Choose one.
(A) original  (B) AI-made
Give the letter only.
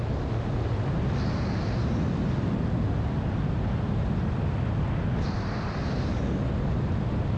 A